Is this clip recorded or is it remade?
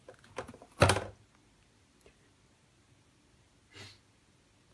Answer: recorded